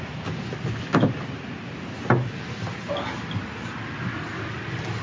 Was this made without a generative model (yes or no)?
yes